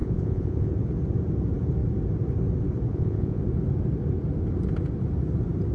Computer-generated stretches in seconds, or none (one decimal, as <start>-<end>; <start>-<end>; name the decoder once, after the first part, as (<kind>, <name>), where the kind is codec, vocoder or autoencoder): 0.0-0.7 (vocoder, Vocos); 2.9-3.4